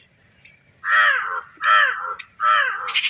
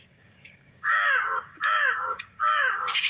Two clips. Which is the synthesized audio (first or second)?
second